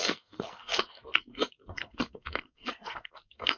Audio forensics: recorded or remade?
remade